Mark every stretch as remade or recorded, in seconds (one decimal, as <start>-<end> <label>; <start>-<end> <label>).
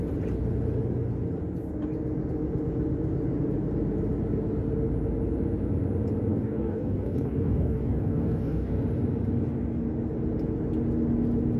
0.0-6.3 recorded; 6.3-8.7 remade; 8.7-11.6 recorded